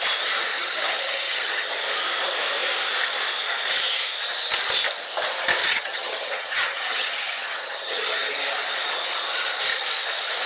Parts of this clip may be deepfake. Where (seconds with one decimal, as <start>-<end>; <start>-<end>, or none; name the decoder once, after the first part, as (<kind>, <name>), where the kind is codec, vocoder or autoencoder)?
0.5-1.7 (vocoder, HiFi-GAN); 5.6-8.3